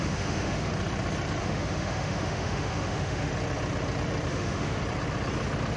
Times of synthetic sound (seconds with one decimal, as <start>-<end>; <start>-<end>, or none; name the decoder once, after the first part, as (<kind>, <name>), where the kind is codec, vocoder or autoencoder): 0.0-0.7 (autoencoder, DAC-VAE); 1.4-3.3; 4.3-4.8